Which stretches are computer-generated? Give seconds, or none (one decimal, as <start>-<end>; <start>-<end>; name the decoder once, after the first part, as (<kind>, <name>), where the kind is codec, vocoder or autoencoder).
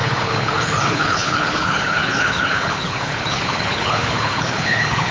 0.0-5.1 (codec, HILCodec)